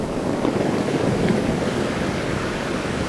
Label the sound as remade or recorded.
remade